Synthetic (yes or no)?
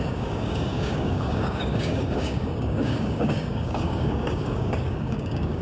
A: yes